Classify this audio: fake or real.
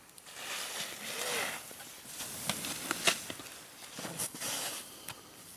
real